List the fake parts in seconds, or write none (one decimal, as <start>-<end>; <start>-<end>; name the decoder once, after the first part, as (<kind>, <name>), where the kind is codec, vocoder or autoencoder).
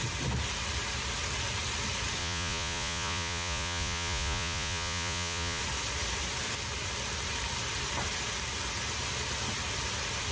2.2-5.6 (vocoder, Vocos)